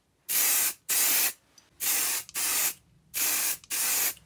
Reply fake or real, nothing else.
real